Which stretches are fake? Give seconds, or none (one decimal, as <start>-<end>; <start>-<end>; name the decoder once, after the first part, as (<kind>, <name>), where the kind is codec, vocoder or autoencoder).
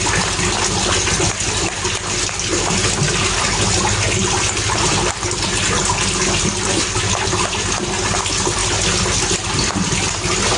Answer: none